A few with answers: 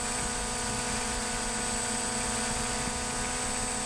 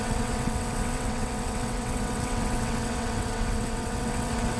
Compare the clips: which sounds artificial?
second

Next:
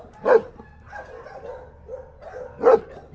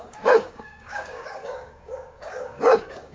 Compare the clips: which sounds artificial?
second